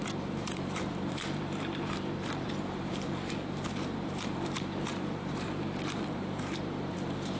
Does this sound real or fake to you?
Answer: fake